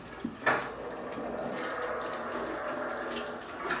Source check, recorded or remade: recorded